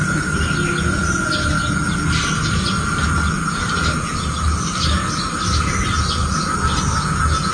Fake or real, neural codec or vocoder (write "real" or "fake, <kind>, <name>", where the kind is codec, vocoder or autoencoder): real